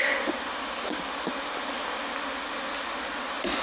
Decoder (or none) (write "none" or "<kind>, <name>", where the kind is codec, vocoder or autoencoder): none